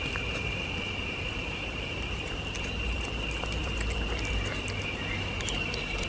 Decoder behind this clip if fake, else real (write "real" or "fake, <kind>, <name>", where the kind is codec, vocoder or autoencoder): fake, vocoder, BigVGAN v2